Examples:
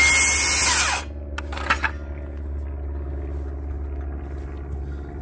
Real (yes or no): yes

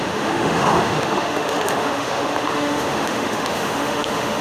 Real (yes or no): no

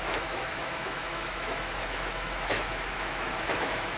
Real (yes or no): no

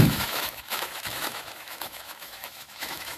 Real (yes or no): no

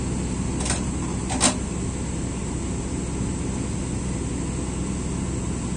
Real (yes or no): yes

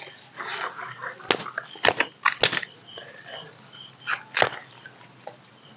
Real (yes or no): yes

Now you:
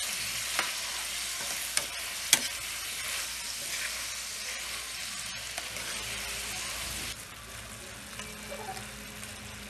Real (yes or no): yes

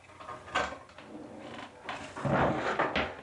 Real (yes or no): yes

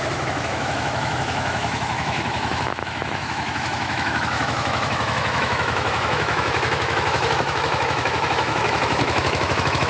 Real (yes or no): no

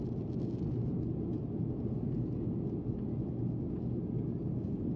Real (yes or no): yes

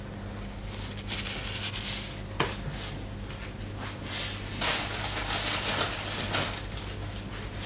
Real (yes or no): yes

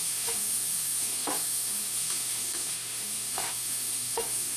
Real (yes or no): no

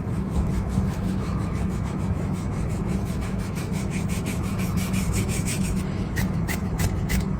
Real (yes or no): no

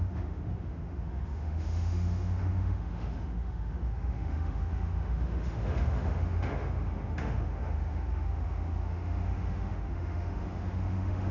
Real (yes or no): no